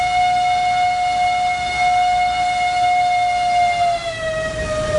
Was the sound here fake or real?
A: real